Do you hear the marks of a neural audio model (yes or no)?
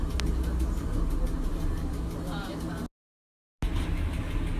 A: no